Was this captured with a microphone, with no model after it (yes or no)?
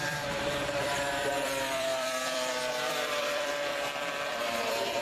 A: no